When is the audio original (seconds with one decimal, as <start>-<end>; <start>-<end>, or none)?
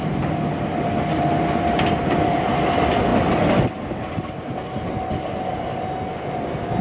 0.0-6.8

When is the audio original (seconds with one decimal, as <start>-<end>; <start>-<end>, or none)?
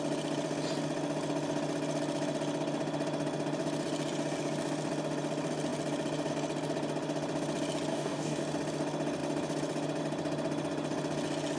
0.0-7.9; 8.4-11.6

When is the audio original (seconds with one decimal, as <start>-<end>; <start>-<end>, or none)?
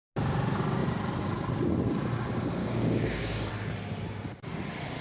0.0-2.6; 3.5-5.0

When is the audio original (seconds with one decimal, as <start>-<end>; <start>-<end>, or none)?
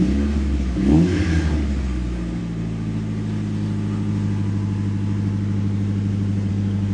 2.4-6.5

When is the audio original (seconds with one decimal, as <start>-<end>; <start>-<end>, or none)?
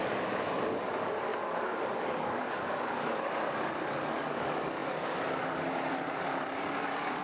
none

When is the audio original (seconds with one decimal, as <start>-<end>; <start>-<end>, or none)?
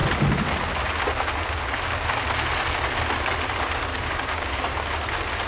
0.0-3.9; 4.8-5.5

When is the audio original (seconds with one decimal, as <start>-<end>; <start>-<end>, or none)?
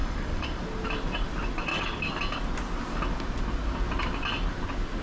0.6-1.7; 2.2-5.0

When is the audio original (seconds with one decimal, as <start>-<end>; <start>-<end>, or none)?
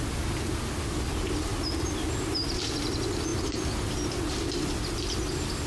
0.0-5.7